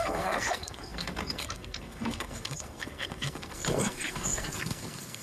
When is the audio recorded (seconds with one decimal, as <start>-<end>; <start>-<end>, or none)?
none